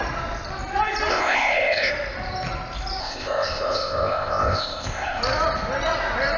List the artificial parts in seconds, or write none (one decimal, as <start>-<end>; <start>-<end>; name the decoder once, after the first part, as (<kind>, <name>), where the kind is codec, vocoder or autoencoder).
1.1-1.9 (codec, ZipCodec); 3.0-5.2